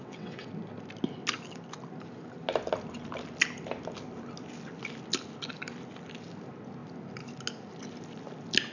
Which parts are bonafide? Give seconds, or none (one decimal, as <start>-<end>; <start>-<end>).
0.5-8.7